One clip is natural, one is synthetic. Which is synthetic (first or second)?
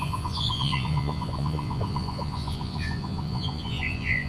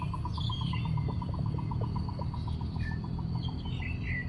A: first